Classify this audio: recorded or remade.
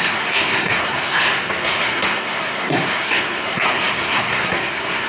remade